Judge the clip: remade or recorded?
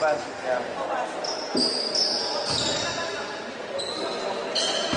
recorded